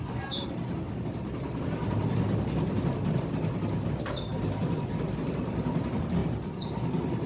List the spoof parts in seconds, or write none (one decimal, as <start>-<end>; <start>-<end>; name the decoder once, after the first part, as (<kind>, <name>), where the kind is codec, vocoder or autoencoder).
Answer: none